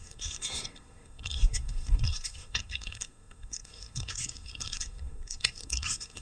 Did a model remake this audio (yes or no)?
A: yes